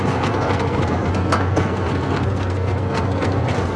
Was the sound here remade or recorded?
remade